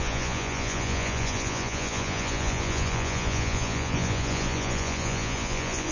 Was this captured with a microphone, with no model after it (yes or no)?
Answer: no